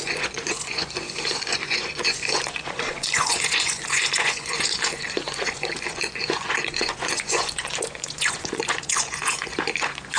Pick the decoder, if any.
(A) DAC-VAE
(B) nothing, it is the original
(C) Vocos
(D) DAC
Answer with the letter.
C